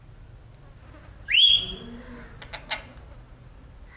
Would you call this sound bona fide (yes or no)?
yes